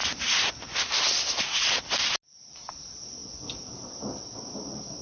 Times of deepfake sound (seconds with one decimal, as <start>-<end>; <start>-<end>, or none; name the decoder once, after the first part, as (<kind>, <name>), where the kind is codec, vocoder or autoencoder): 3.2-4.0 (vocoder, BigVGAN v2)